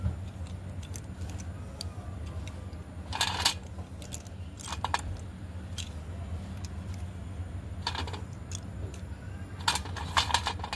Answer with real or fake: real